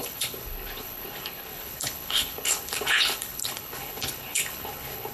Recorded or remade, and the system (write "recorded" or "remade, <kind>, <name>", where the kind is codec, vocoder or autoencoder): remade, codec, HILCodec